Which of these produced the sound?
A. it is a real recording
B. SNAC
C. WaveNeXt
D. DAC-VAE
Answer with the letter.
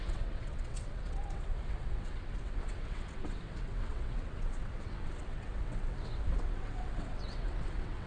C